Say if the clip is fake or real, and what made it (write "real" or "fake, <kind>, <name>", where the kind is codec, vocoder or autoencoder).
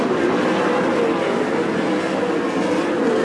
real